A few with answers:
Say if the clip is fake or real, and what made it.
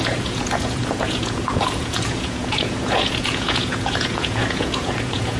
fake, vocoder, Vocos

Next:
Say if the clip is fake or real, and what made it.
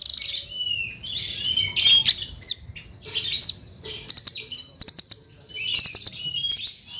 real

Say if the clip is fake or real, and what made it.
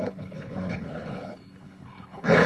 fake, codec, HILCodec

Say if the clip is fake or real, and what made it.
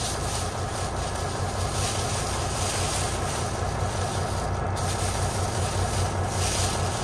real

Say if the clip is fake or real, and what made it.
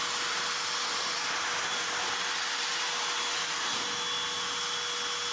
real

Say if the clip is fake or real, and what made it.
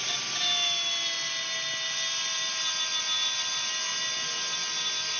real